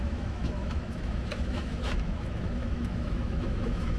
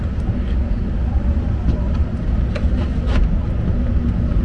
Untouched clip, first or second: second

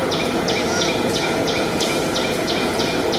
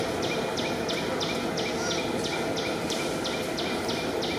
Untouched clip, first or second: second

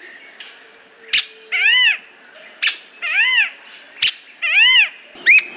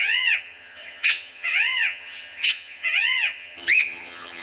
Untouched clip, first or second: first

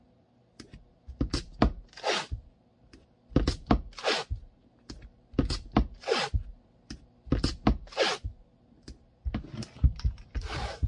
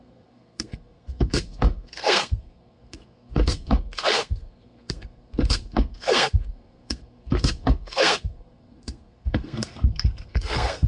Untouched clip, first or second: first